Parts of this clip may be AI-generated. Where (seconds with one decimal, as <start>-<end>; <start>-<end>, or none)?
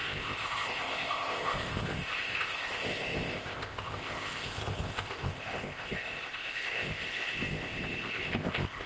0.0-8.9